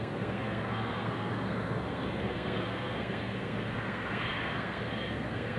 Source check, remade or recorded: remade